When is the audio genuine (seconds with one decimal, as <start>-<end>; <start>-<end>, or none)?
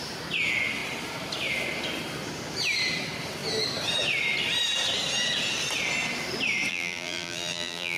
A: 0.0-6.7